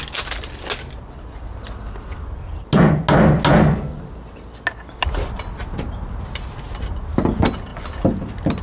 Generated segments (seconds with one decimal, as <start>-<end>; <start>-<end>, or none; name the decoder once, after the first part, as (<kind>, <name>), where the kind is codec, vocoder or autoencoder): none